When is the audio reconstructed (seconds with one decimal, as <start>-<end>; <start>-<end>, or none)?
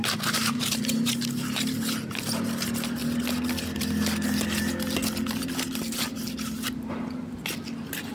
0.0-1.2